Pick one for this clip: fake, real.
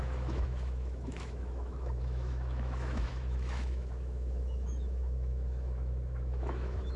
fake